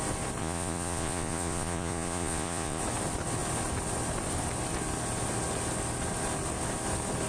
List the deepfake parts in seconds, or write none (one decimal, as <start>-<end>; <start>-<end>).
0.4-2.8